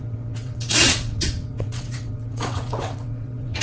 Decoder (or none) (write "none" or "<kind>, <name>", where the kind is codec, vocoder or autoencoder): vocoder, WaveNeXt